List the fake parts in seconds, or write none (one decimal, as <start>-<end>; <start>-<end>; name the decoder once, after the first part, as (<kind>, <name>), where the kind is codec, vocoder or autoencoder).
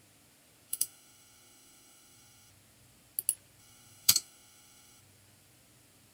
0.7-2.5 (autoencoder, DAC-VAE); 3.6-5.0